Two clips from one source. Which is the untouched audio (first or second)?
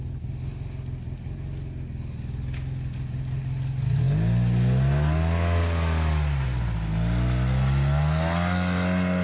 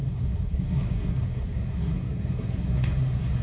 first